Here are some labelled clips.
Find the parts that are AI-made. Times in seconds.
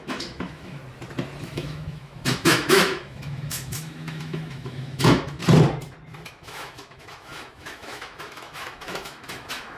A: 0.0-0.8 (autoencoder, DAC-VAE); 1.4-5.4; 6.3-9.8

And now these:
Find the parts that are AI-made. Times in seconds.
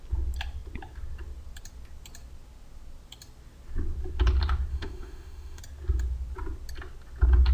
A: 4.7-5.6 (autoencoder, DAC-VAE)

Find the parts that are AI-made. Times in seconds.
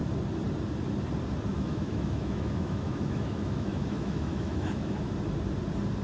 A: 1.5-5.1 (autoencoder, DAC-VAE)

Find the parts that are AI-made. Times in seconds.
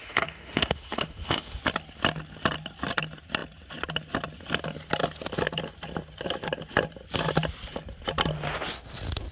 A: 0.0-1.6 (autoencoder, DAC-VAE)